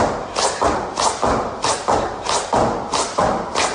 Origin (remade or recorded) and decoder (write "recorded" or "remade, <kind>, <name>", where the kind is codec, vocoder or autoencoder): recorded